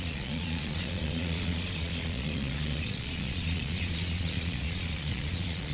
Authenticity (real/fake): fake